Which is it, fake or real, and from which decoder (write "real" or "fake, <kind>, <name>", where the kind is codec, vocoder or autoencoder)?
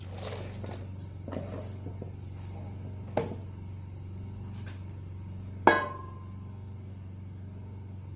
real